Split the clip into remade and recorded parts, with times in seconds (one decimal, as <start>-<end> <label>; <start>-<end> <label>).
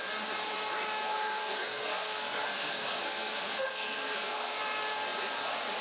0.0-1.1 recorded; 1.1-4.6 remade; 4.6-5.8 recorded